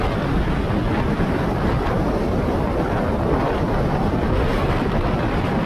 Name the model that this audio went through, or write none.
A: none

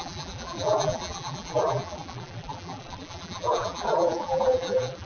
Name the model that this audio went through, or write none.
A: vocoder, BigVGAN v2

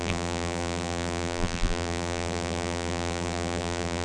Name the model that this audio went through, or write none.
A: vocoder, BigVGAN v2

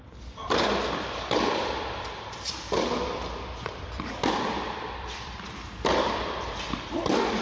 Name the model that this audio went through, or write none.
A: vocoder, BigVGAN v2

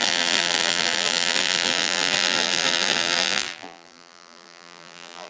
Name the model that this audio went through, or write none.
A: vocoder, BigVGAN v2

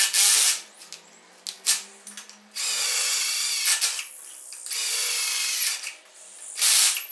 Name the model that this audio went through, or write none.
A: none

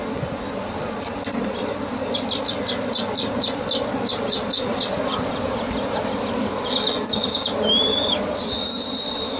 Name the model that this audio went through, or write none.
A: none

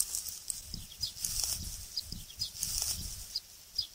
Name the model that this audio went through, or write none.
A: none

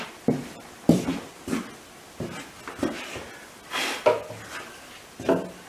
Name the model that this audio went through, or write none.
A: none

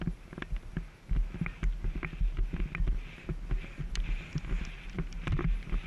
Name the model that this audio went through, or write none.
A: none